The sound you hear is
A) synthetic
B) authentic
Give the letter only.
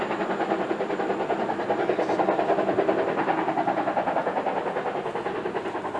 B